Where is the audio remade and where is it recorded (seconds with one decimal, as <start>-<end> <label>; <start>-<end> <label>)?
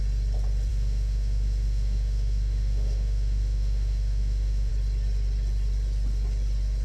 0.0-0.7 recorded; 0.7-4.7 remade; 4.7-6.8 recorded